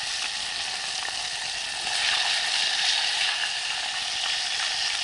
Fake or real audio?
real